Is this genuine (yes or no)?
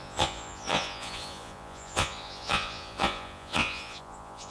no